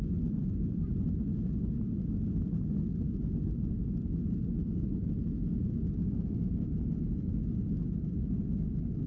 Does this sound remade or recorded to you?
recorded